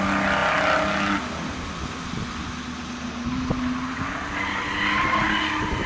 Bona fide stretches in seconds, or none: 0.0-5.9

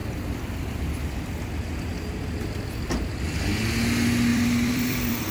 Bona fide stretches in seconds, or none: 3.2-4.3

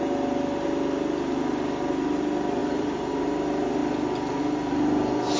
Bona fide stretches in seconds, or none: 0.0-2.6; 3.1-5.4

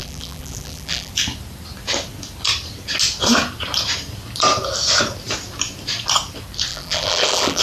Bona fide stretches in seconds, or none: 1.1-6.7

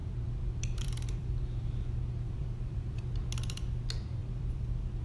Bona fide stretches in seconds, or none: 3.0-4.2

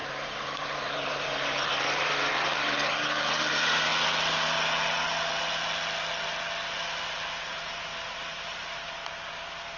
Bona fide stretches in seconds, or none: 3.9-7.5

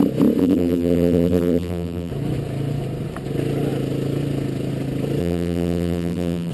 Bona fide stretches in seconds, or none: 0.0-0.4; 2.1-5.2